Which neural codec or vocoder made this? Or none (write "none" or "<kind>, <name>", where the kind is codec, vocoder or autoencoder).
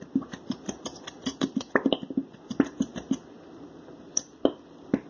none